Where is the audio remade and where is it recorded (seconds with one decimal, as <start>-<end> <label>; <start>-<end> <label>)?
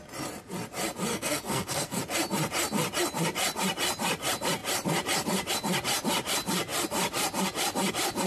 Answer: 0.0-1.1 recorded; 1.1-2.0 remade; 2.0-8.3 recorded